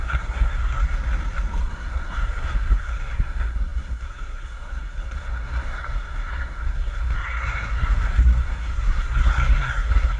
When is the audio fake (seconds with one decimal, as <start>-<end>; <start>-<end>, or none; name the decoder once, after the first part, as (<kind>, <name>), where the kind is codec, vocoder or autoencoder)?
0.0-0.8 (codec, SNAC); 1.6-10.2